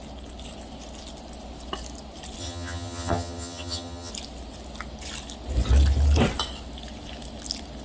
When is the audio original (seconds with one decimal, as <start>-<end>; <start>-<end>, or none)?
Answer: 0.0-2.4; 4.1-7.8